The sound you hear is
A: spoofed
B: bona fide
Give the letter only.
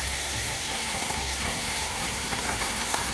A